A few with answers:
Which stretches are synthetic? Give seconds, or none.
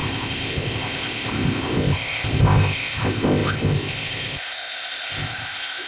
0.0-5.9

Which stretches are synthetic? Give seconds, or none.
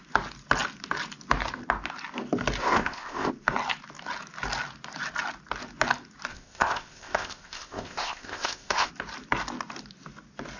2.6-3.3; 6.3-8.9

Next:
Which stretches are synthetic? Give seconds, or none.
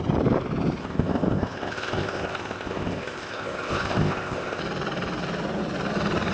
0.8-4.6